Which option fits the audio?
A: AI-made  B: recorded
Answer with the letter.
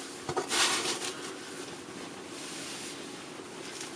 B